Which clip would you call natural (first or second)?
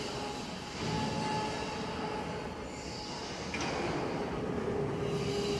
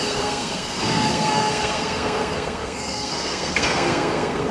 first